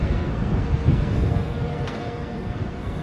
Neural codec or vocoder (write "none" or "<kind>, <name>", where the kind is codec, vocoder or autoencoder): codec, SNAC